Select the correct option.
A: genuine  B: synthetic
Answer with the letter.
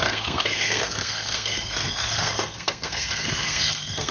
B